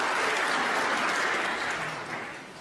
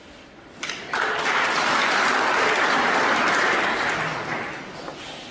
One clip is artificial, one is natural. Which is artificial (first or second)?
second